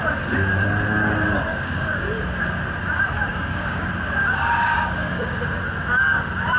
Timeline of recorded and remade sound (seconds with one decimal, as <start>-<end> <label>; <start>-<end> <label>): 0.0-1.5 recorded; 1.5-2.3 remade; 2.3-3.3 recorded; 3.3-3.9 remade; 3.9-4.7 recorded; 4.7-5.4 remade; 5.4-6.6 recorded